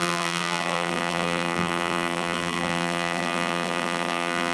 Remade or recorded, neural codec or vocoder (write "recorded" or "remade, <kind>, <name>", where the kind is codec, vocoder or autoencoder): remade, vocoder, BigVGAN v2